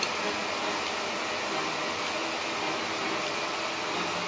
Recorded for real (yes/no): yes